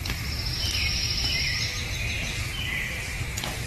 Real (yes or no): yes